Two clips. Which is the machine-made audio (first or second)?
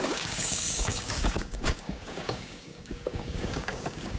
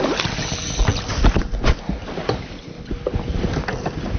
first